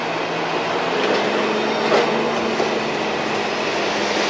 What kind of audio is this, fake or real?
real